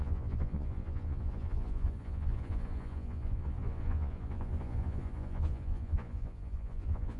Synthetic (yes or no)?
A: yes